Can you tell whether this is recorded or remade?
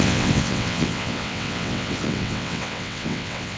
remade